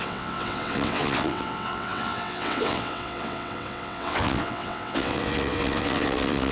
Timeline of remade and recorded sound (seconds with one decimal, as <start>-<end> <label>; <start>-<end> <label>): 0.0-6.5 remade